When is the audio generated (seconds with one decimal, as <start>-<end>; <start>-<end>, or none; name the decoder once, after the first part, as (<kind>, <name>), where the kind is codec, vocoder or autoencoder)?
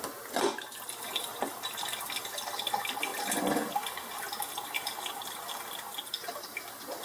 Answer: none